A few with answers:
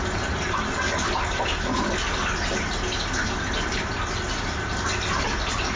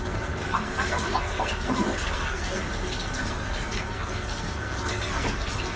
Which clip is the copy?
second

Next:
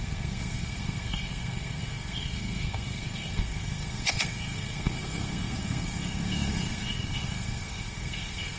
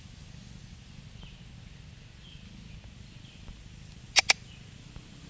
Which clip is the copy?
first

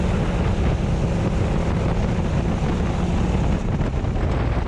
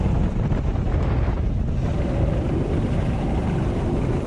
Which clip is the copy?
second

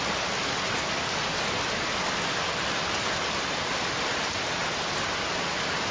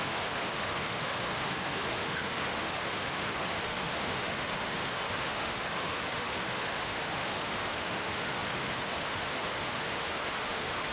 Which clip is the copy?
second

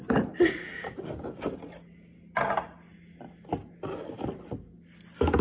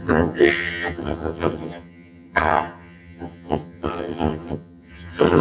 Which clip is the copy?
second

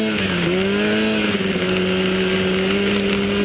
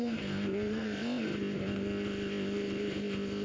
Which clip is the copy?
second